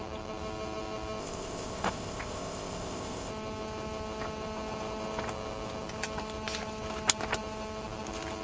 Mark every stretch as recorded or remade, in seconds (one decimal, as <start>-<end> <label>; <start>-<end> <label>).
0.0-1.2 recorded; 1.2-3.3 remade; 3.3-8.4 recorded